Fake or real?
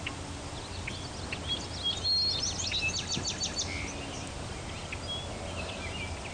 real